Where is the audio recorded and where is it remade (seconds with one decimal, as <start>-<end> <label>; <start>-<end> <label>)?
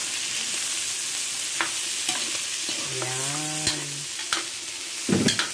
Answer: 0.0-5.5 recorded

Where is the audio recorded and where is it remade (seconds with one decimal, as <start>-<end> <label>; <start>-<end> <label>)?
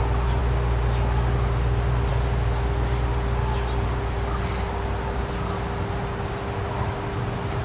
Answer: 0.0-7.6 recorded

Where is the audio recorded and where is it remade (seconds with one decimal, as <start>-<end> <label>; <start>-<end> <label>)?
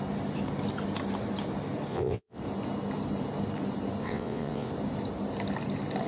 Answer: 0.0-1.9 recorded; 1.9-2.4 remade; 2.4-4.0 recorded; 4.0-4.7 remade; 4.7-6.1 recorded